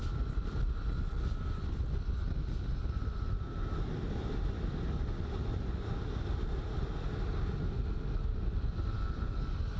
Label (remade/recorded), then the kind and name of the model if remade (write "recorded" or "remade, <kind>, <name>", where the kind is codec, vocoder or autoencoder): recorded